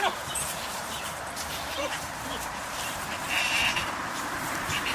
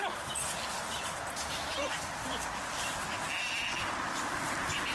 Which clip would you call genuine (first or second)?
second